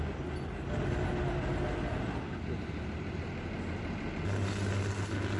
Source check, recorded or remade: recorded